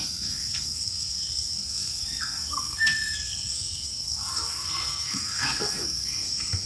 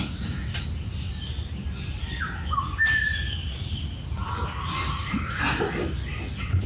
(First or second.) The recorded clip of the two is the second